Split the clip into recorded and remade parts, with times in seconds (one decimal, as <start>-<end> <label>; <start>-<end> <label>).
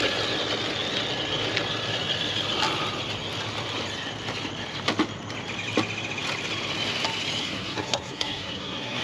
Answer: 0.0-7.4 recorded; 7.4-9.0 remade